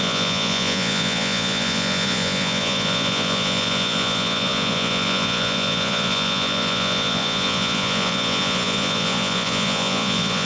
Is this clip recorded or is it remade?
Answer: remade